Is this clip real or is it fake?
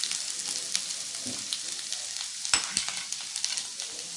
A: real